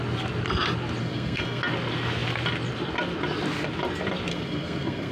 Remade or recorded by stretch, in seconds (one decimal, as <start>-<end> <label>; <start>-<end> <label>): 0.0-1.0 recorded; 1.0-1.6 remade; 1.6-4.3 recorded; 4.3-5.1 remade